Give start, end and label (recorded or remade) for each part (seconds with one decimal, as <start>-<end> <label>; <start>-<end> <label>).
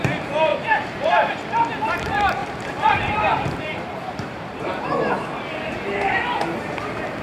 0.0-0.5 recorded; 0.5-1.1 remade; 1.1-2.4 recorded; 2.4-4.8 remade; 4.8-7.2 recorded